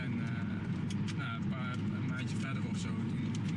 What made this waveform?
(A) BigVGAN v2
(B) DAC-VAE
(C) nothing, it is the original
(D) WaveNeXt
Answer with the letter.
A